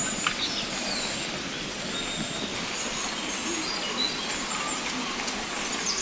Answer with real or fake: real